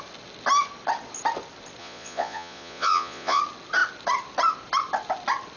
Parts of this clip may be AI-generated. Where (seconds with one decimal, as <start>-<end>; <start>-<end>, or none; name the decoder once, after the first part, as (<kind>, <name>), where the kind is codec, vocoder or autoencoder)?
1.8-3.4 (vocoder, Vocos)